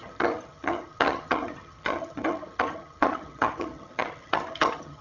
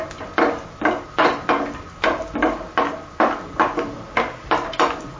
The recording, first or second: second